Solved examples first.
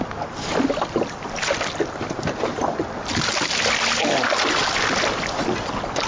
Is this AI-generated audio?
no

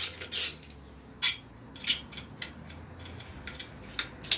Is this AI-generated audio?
no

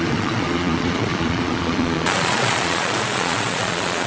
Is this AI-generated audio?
yes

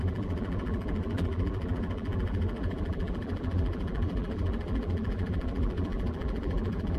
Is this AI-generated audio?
yes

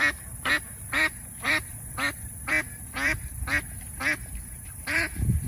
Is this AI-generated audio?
yes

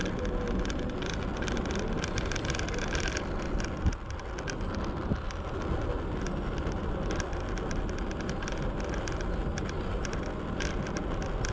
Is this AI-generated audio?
no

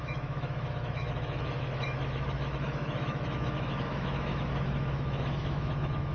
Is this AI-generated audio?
yes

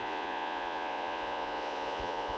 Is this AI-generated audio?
yes